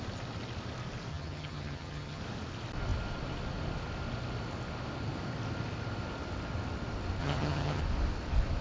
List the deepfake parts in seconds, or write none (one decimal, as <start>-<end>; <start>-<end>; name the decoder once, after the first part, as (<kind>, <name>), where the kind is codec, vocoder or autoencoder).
1.1-2.2 (vocoder, HiFi-GAN); 7.2-7.8